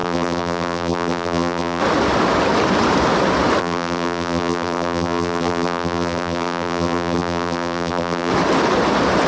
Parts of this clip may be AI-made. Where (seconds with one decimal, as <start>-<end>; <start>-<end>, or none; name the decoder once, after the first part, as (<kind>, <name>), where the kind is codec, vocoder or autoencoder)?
0.0-1.8 (vocoder, BigVGAN v2); 3.6-8.3